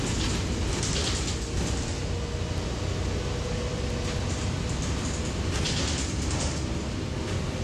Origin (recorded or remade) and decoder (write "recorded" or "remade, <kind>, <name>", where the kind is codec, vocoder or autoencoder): recorded